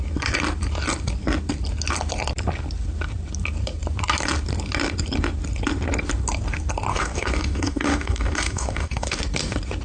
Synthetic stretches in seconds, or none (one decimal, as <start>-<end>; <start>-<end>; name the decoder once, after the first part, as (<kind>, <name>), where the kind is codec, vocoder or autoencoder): 6.9-9.2 (codec, DAC)